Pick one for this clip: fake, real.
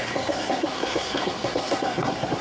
fake